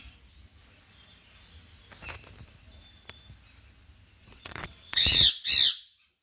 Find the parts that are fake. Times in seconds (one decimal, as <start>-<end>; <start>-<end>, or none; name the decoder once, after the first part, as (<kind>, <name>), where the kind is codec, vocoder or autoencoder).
4.2-5.5 (vocoder, WaveNeXt)